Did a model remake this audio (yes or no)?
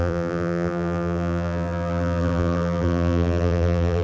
yes